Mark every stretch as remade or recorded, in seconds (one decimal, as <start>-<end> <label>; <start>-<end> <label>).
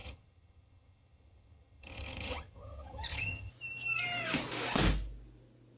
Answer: 0.0-3.5 remade; 3.5-5.8 recorded